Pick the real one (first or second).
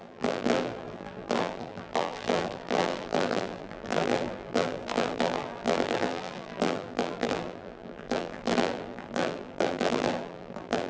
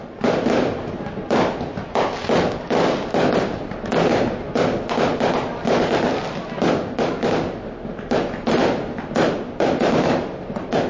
second